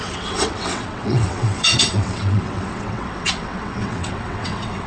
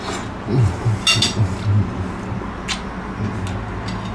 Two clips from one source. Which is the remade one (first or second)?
first